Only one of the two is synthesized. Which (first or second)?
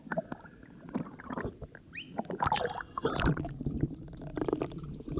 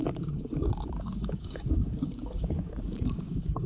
second